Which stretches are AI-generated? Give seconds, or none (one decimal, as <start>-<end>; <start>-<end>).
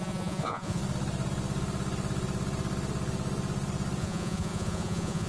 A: 0.0-0.8; 4.0-5.3